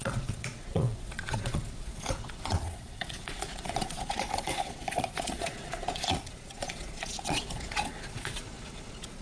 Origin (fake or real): fake